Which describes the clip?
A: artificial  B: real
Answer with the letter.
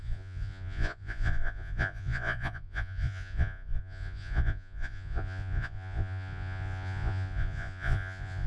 A